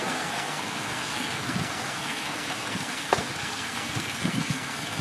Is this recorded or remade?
remade